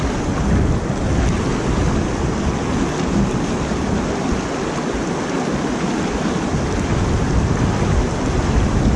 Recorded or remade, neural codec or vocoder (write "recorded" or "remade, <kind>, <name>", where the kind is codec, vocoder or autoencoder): recorded